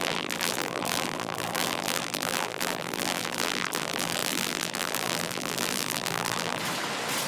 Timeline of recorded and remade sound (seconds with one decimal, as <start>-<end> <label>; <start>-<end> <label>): 0.0-6.6 remade; 6.6-7.3 recorded